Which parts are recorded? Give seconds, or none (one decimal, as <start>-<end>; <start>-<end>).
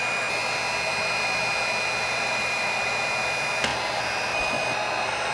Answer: 0.0-2.0; 2.9-5.3